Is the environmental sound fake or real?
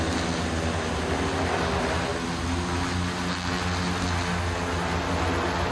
real